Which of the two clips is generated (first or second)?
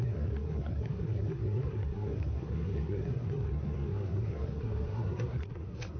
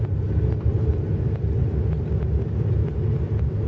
first